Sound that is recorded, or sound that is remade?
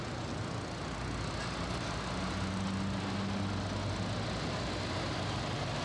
recorded